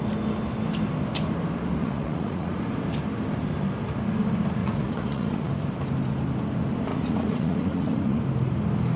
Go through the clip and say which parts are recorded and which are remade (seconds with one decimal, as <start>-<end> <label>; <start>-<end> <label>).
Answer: 0.0-1.8 recorded; 1.8-2.6 remade; 2.6-4.6 recorded; 4.6-5.5 remade; 5.5-6.9 recorded; 6.9-8.2 remade; 8.2-9.0 recorded